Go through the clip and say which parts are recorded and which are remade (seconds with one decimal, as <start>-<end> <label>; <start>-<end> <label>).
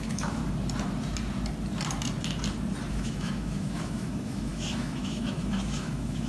0.0-0.4 remade; 0.4-2.9 recorded; 2.9-6.3 remade